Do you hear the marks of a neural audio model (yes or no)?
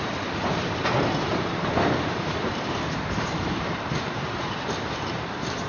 yes